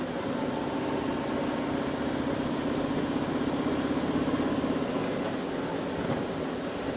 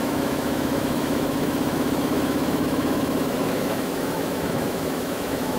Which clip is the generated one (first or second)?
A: second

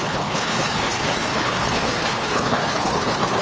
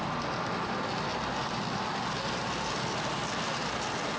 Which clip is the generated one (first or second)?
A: first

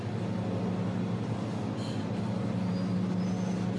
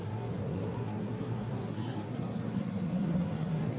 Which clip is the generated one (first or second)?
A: second